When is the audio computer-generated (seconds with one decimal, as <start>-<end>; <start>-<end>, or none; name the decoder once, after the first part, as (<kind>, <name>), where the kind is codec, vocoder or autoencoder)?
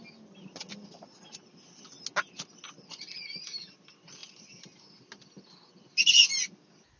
none